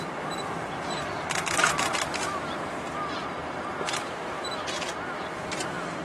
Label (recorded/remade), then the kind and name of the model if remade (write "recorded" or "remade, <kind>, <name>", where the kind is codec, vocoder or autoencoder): remade, vocoder, BigVGAN v2